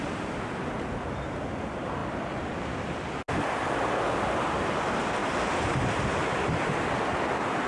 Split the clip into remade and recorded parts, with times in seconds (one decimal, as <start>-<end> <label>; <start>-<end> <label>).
0.0-7.7 recorded